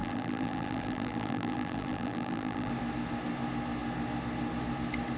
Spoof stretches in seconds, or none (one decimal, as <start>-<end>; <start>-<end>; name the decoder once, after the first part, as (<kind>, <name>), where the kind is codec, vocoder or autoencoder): 0.0-2.7 (vocoder, BigVGAN v2)